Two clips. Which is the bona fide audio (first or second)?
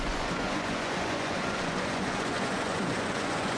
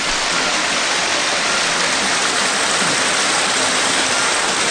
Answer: second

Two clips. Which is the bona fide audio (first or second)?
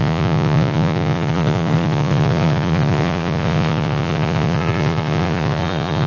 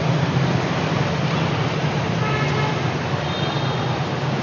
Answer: second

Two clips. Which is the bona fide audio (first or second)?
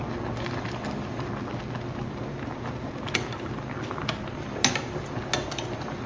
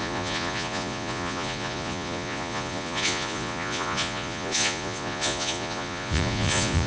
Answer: first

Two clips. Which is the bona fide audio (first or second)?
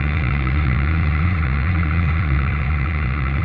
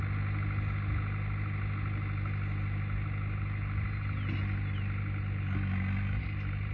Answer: second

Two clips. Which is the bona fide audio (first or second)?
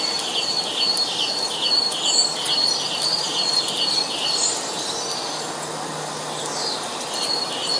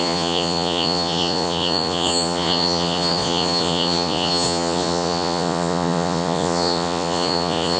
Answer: first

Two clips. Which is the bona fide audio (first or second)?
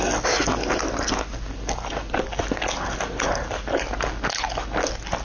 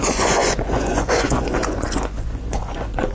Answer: first